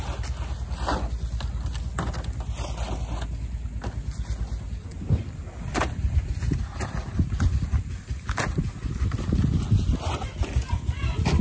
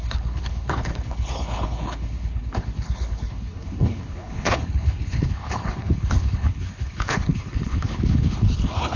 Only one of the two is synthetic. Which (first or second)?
second